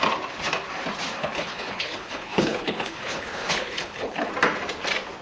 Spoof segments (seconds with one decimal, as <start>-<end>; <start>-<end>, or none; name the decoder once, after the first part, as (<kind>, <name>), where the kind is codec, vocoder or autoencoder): 1.2-4.3 (codec, HILCodec)